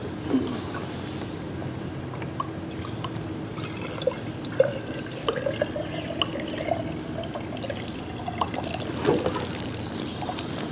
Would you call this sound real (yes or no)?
yes